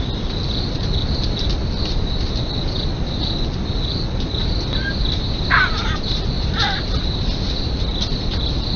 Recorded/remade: recorded